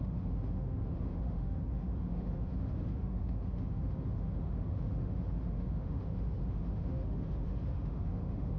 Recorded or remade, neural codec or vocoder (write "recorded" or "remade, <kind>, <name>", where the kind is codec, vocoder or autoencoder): remade, autoencoder, DAC-VAE